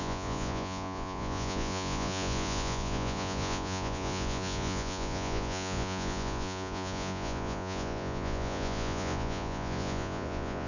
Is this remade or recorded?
remade